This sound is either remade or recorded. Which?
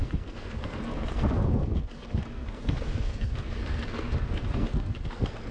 remade